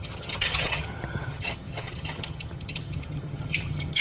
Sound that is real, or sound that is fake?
fake